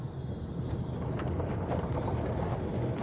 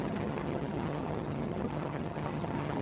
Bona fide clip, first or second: first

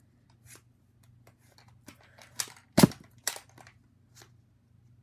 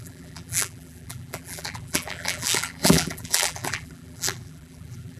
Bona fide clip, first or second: first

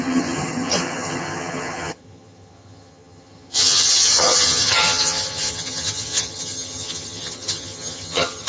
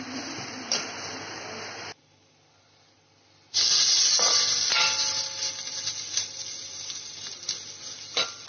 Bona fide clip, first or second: second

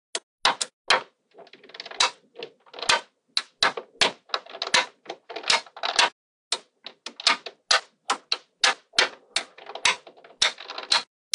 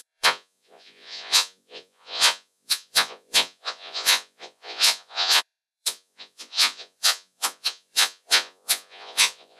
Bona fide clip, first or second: first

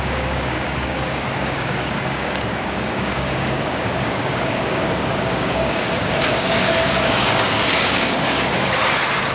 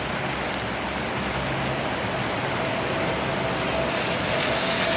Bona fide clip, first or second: second